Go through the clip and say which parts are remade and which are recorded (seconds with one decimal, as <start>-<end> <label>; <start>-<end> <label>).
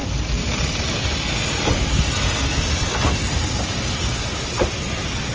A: 0.0-5.3 recorded